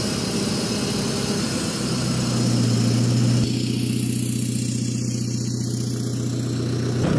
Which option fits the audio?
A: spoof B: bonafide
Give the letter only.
B